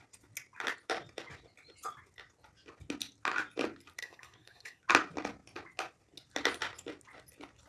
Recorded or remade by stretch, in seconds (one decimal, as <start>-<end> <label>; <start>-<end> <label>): 0.0-4.0 recorded; 4.0-4.8 remade; 4.8-7.7 recorded